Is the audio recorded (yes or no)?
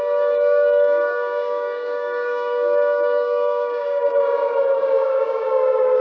no